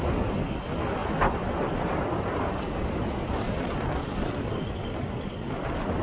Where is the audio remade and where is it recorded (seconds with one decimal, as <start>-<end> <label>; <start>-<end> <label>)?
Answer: 0.0-1.0 recorded; 1.0-4.6 remade; 4.6-6.0 recorded